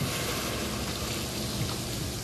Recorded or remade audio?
recorded